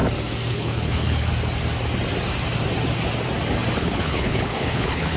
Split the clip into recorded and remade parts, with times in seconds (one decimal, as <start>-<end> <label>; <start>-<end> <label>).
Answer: 0.0-0.5 recorded; 0.5-1.3 remade; 1.3-3.8 recorded; 3.8-5.2 remade